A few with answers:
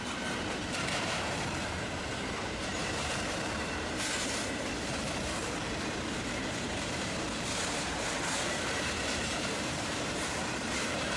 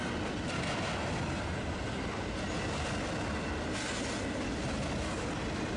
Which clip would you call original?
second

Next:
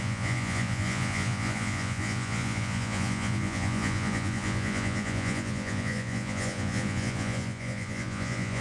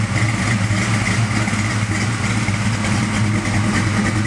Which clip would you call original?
second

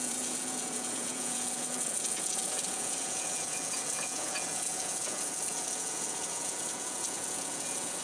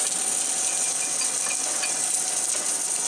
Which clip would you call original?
second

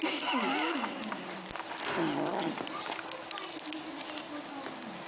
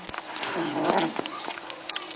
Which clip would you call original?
first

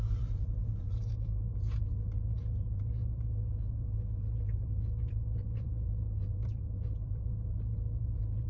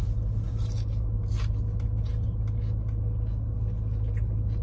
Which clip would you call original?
second